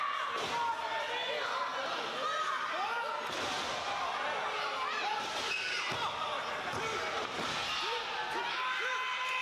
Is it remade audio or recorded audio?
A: recorded